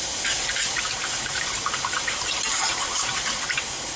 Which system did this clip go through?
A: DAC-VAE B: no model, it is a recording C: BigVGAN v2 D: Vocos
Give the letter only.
C